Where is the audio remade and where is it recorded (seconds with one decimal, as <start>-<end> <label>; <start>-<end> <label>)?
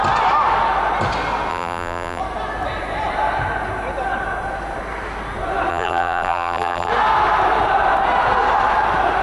0.0-1.5 recorded; 1.5-2.2 remade; 2.2-5.7 recorded; 5.7-6.9 remade; 6.9-9.2 recorded